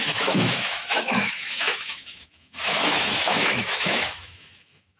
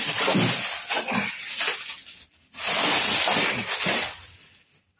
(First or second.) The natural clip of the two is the second